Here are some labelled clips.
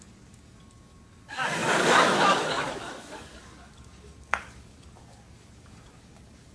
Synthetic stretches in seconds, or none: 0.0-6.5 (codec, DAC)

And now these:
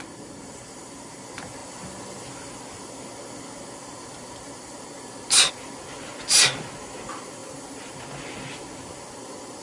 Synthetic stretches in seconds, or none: 7.4-7.9 (vocoder, BigVGAN v2)

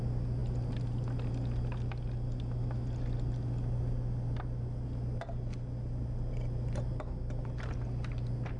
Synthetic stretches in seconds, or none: none